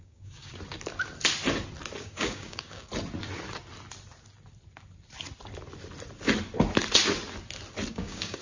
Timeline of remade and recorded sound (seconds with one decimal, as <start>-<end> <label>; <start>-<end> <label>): 0.0-0.5 remade; 0.5-2.0 recorded; 2.0-2.9 remade; 2.9-7.9 recorded; 7.9-8.4 remade